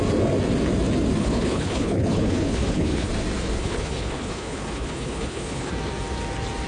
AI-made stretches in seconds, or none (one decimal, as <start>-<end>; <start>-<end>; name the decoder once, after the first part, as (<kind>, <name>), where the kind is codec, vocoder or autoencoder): 1.2-3.1 (codec, HILCodec); 3.6-5.7

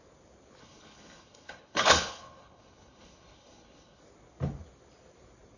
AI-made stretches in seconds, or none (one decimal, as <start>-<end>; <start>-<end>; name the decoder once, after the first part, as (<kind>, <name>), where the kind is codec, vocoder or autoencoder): 0.6-4.0 (codec, HILCodec)